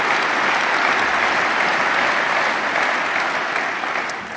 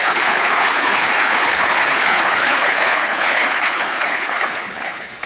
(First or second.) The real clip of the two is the first